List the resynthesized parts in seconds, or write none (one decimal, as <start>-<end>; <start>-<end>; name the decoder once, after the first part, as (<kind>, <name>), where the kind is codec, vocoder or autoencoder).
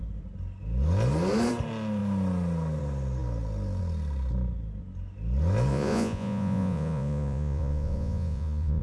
5.7-8.8 (vocoder, Vocos)